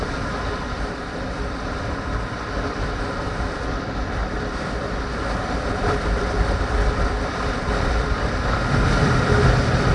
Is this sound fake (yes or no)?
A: yes